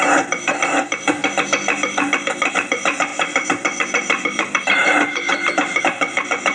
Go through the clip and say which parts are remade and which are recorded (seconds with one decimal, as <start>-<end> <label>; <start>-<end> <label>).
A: 0.0-1.2 remade; 1.2-2.5 recorded; 2.5-6.5 remade